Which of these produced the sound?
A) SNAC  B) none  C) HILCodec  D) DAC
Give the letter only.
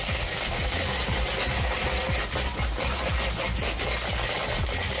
B